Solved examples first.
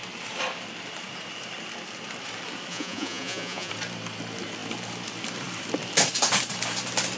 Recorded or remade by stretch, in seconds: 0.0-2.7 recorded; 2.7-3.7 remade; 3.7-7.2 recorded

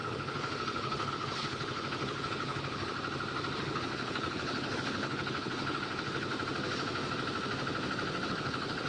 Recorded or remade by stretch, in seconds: 0.0-2.9 remade; 2.9-3.6 recorded; 3.6-6.3 remade; 6.3-8.3 recorded; 8.3-8.9 remade